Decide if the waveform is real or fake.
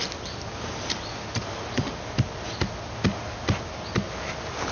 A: real